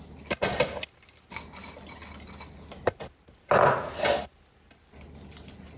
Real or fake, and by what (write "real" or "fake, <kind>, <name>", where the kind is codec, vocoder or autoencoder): real